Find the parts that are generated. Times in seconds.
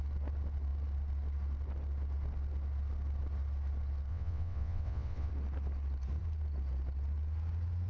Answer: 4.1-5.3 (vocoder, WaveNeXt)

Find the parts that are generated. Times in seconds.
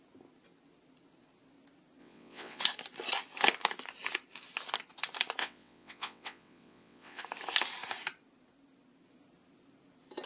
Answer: 2.0-2.6 (vocoder, WaveNeXt); 5.4-7.2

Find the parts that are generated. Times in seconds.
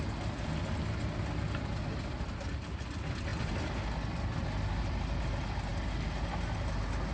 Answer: none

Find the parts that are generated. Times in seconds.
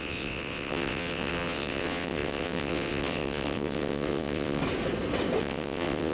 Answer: 0.0-4.6 (vocoder, WaveNeXt); 5.4-6.1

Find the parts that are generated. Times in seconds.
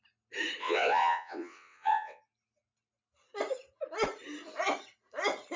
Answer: 0.6-2.2 (vocoder, WaveNeXt)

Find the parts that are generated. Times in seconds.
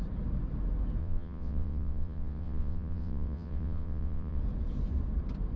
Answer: 1.0-4.4 (vocoder, WaveNeXt)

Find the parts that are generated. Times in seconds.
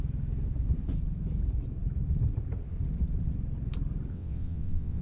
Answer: 4.1-5.0 (vocoder, WaveNeXt)